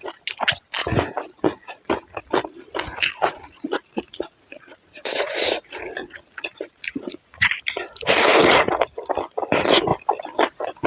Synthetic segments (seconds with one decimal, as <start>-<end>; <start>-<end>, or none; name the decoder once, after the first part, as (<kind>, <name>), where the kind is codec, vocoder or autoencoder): 0.8-2.2 (vocoder, Vocos); 2.9-7.5; 8.3-9.0

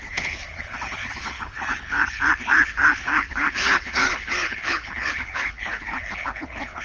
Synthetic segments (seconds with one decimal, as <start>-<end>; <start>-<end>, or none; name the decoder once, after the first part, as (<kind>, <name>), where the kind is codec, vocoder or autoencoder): 0.0-6.8 (codec, HILCodec)

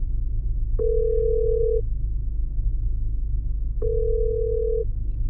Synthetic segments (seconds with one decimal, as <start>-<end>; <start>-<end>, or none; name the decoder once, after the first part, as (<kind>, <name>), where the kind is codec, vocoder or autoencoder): none